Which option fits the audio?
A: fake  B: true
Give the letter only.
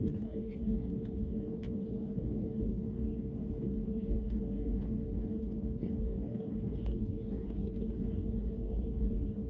A